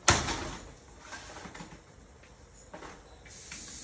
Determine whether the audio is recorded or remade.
recorded